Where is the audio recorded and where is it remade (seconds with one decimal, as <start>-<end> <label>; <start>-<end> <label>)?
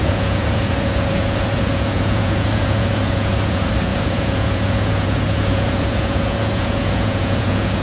0.0-7.8 remade